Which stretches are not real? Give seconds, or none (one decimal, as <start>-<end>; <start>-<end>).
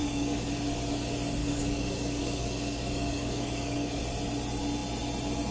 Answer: 0.0-0.5; 1.4-4.0